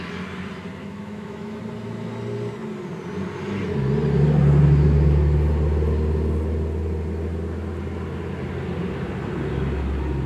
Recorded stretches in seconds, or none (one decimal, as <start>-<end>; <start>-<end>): 0.0-0.8; 1.6-10.3